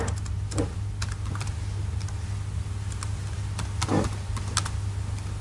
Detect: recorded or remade recorded